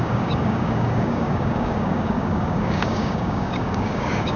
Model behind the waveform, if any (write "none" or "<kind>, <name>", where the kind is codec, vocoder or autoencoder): codec, DAC